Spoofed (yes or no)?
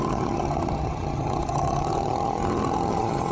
yes